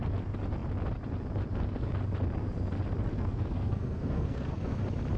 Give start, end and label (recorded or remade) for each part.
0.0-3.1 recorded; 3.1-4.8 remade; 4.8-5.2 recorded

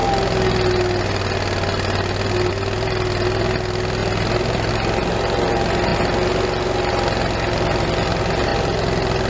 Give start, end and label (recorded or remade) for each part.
0.0-9.3 recorded

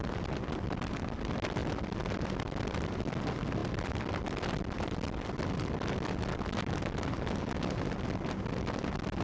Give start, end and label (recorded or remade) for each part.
0.0-0.9 remade; 0.9-3.6 recorded; 3.6-6.2 remade; 6.2-9.2 recorded

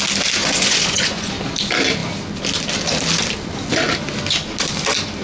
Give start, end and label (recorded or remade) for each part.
0.0-0.4 recorded; 0.4-1.3 remade; 1.3-5.2 recorded